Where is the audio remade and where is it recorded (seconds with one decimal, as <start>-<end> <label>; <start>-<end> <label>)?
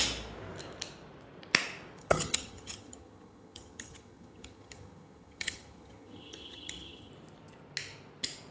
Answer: 0.0-2.0 recorded; 2.0-7.1 remade; 7.1-8.5 recorded